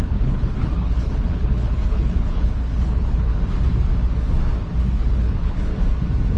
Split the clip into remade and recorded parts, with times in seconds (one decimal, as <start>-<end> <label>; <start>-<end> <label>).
0.0-3.3 remade; 3.3-4.8 recorded; 4.8-5.7 remade; 5.7-6.4 recorded